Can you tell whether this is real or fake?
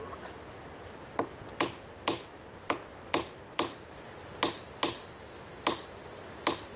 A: real